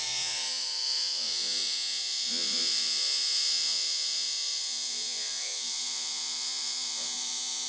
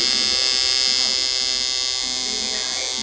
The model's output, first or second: first